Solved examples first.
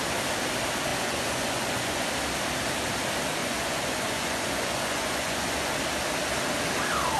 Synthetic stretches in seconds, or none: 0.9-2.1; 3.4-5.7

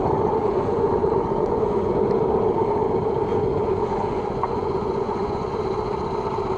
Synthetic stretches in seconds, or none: 0.4-2.2; 3.3-5.6

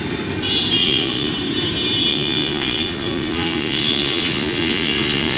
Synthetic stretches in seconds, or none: 0.8-1.3; 2.1-5.4

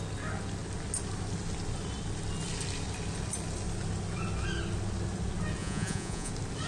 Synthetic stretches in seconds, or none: 5.6-6.3

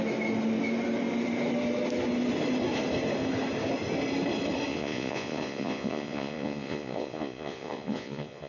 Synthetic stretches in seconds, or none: 4.7-8.5

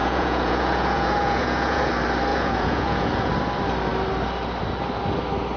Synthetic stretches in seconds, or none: 0.0-1.9; 2.3-3.3